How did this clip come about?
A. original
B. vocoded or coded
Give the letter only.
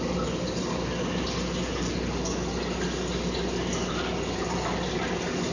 A